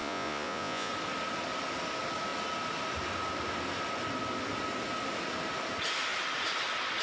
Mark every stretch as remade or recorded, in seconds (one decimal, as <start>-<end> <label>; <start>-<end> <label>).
0.0-0.9 remade; 0.9-7.0 recorded